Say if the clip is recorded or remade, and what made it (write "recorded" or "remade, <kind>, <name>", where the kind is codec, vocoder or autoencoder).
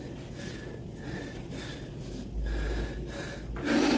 recorded